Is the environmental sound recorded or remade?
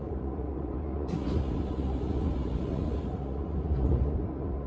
remade